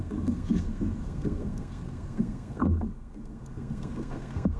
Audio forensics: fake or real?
fake